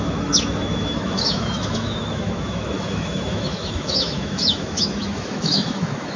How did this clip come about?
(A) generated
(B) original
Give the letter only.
A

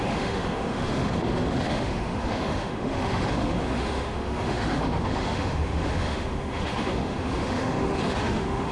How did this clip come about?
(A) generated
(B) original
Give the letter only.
A